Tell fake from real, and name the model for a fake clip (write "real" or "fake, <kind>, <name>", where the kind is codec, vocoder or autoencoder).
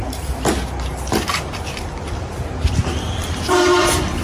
fake, vocoder, BigVGAN v2